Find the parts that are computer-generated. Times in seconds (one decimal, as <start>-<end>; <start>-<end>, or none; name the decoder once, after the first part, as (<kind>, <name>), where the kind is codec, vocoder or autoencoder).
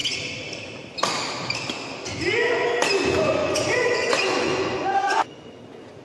3.4-5.6 (vocoder, Vocos)